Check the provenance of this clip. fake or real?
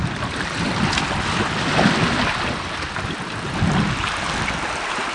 real